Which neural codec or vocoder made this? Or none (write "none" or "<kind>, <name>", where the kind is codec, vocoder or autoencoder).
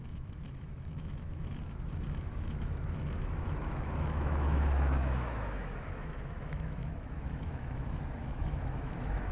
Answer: autoencoder, DAC-VAE